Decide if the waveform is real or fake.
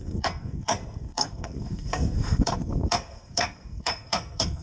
fake